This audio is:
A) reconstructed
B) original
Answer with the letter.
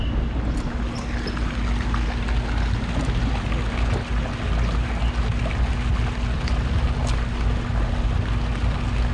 B